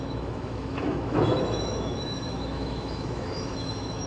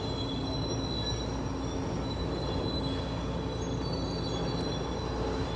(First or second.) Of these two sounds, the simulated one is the first